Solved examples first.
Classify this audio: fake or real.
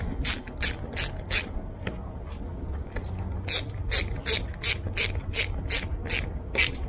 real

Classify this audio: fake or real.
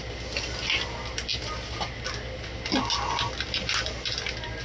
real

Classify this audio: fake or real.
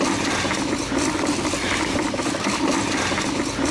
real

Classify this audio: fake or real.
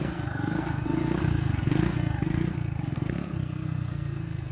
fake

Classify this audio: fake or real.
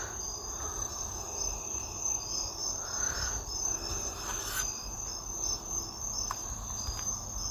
real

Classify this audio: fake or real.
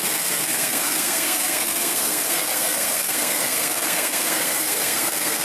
fake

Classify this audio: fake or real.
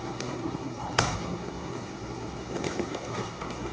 fake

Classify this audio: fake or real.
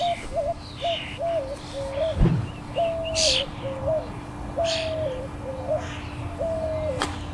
real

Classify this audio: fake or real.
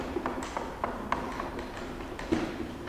real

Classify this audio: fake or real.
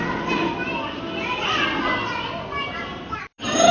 real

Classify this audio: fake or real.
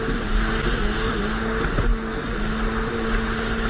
real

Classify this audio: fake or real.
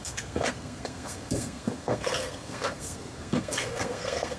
fake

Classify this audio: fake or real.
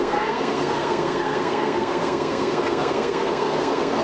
fake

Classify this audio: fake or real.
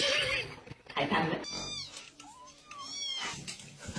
real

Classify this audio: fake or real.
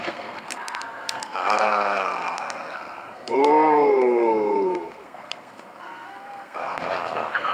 fake